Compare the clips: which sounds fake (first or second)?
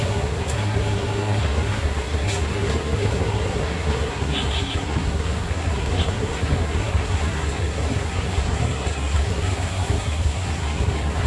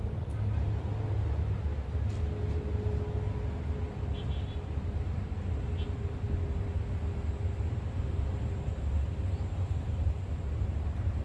first